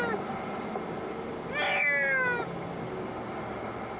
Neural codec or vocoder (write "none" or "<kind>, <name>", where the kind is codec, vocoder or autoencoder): none